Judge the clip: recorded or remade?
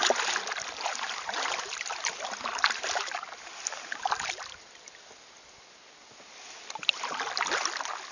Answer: recorded